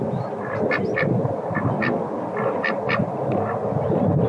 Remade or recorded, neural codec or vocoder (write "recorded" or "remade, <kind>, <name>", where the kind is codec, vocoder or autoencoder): recorded